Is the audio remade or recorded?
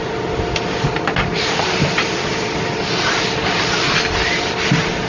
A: recorded